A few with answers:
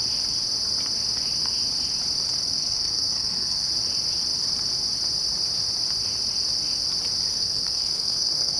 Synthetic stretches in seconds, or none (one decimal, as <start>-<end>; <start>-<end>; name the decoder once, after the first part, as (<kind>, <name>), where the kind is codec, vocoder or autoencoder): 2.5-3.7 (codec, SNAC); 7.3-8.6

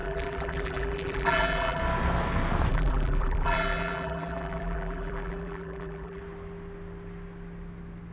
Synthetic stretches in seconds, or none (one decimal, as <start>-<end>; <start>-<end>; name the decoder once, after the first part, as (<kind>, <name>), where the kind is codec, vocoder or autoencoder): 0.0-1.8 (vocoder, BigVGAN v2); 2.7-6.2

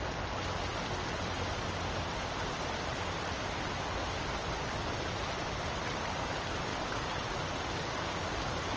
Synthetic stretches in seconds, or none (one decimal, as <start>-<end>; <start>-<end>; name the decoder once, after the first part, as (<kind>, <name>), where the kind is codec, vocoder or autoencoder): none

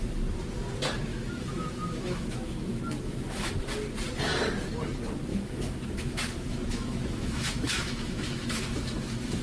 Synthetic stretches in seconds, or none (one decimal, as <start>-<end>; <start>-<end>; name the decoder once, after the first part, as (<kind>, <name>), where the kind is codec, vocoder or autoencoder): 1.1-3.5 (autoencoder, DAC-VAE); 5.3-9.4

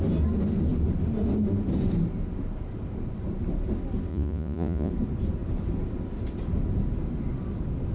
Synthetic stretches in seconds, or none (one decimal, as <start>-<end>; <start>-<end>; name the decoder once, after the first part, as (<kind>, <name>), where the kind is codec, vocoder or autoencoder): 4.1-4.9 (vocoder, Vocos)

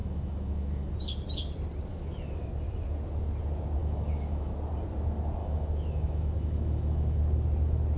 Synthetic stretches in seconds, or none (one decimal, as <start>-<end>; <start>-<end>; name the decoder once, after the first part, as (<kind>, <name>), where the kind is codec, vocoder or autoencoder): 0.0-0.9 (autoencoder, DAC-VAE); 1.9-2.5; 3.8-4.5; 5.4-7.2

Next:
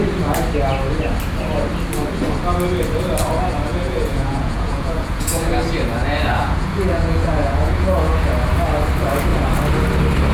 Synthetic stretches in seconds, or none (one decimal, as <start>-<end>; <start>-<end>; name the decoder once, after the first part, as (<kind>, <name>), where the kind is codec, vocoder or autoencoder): 3.7-5.4 (vocoder, Vocos); 6.3-8.4

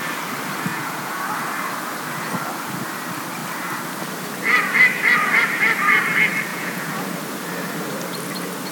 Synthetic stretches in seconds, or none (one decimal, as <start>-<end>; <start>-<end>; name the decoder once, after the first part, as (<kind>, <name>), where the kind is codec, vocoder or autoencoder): 0.7-1.2 (vocoder, Vocos); 6.5-7.1